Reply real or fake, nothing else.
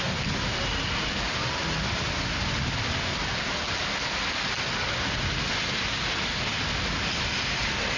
real